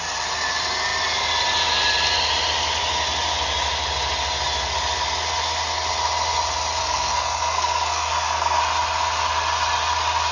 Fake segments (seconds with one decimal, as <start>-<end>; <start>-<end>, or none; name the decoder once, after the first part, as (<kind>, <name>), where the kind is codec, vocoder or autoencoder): 6.8-8.6 (codec, SNAC)